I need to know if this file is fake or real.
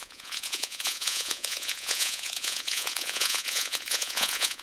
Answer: fake